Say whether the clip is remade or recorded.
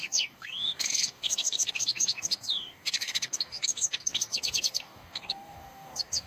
remade